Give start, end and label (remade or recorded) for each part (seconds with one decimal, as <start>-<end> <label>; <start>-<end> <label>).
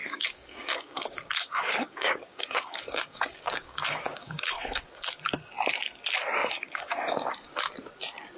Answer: 0.0-4.9 remade; 4.9-6.4 recorded; 6.4-7.3 remade; 7.3-8.4 recorded